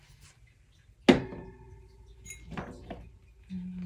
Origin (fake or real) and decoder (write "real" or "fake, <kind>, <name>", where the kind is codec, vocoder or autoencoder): real